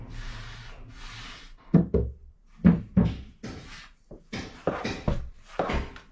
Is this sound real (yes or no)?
yes